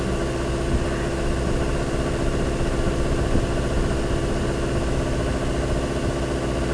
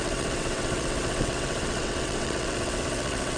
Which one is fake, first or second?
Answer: second